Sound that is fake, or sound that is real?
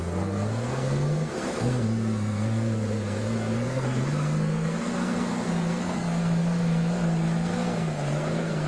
fake